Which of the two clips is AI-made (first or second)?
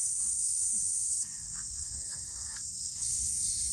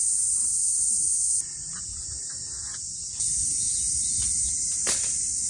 first